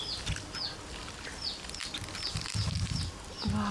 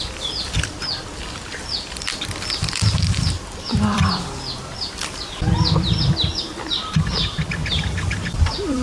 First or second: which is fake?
second